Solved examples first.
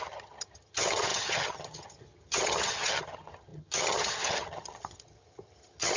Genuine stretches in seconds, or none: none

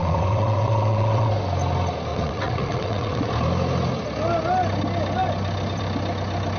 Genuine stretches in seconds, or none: 1.3-2.1; 3.3-6.6

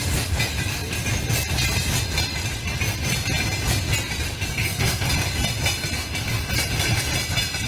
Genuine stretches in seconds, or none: 0.0-4.5; 5.1-7.7